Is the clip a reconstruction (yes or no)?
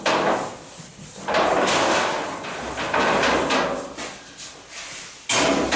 no